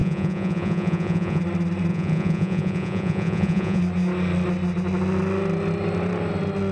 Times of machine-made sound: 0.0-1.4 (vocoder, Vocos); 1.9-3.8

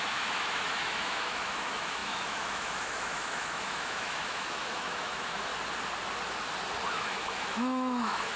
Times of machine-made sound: 0.0-5.5 (autoencoder, DAC-VAE); 6.9-8.4

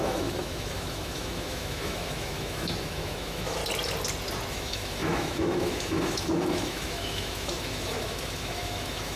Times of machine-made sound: 0.0-3.6 (autoencoder, DAC-VAE); 4.5-9.2